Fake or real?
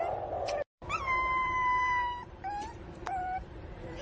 fake